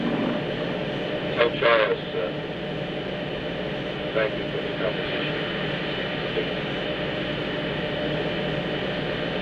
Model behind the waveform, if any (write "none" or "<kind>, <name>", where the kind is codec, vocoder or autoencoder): none